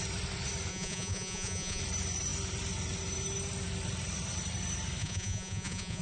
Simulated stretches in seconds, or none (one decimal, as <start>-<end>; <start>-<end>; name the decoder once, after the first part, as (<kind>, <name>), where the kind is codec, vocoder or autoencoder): 0.7-1.8 (vocoder, Vocos); 5.0-6.0